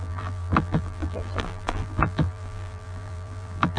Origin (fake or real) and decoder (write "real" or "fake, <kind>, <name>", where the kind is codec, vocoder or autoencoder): fake, vocoder, BigVGAN v2